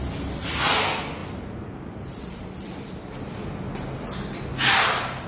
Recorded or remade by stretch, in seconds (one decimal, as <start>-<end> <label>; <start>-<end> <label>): 0.0-5.3 recorded